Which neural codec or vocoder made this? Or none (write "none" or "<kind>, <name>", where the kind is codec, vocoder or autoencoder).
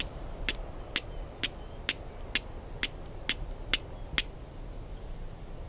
none